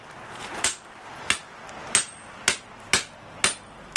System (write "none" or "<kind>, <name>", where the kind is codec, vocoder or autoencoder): none